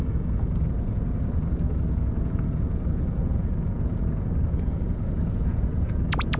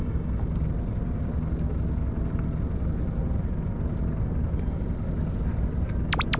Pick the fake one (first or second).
first